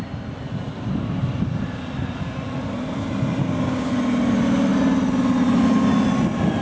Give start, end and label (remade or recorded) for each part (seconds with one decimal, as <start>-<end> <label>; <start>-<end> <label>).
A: 0.0-3.4 recorded; 3.4-3.9 remade; 3.9-6.6 recorded